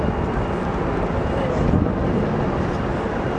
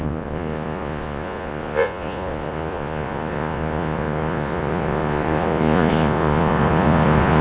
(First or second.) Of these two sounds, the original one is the first